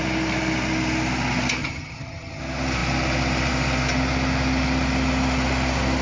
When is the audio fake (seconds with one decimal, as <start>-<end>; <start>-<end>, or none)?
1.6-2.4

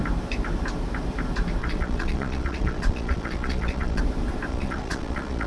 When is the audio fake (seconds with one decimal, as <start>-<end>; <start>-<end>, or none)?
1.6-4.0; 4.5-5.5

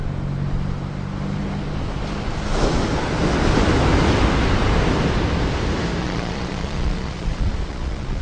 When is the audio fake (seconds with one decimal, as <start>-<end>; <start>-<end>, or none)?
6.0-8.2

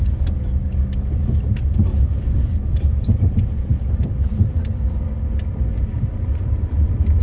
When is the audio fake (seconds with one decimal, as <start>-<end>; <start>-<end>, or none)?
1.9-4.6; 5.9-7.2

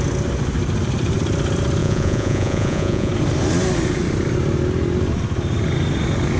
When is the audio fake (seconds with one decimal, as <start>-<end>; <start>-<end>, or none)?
1.8-3.1